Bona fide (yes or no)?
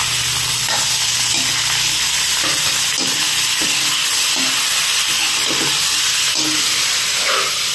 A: yes